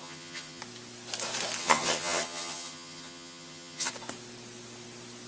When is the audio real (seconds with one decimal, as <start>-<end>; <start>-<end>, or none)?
0.6-1.6; 3.9-5.3